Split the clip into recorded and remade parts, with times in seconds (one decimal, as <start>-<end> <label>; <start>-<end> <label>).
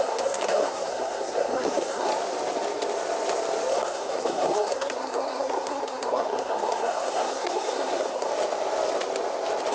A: 0.0-2.1 remade; 2.1-3.7 recorded; 3.7-8.3 remade; 8.3-9.7 recorded